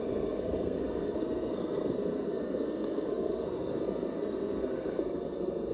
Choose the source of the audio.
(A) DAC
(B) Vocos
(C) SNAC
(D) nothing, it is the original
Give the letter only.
C